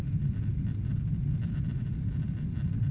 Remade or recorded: recorded